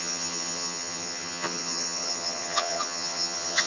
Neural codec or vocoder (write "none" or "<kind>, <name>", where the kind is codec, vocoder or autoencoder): vocoder, HiFi-GAN